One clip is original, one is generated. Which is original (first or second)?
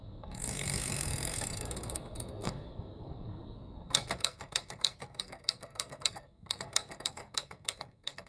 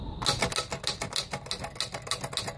second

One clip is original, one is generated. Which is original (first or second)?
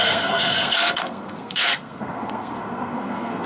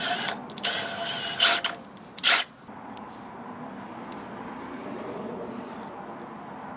second